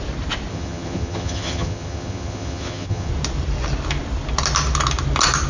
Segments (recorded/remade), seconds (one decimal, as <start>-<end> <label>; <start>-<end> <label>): 0.0-0.5 recorded; 0.5-3.1 remade; 3.1-5.5 recorded